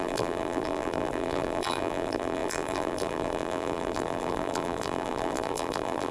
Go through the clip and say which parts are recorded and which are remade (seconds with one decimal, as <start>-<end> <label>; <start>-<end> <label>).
0.0-6.1 remade